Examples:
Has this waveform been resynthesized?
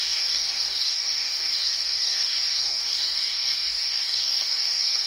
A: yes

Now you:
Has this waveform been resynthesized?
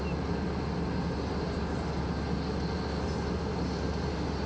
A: no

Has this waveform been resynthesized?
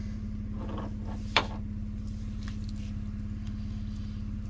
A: yes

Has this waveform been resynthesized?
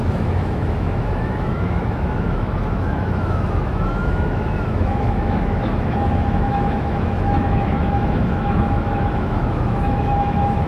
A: yes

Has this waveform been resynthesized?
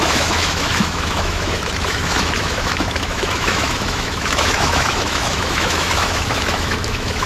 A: yes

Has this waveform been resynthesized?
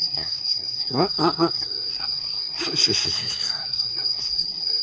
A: yes